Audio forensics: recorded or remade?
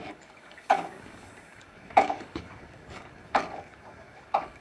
remade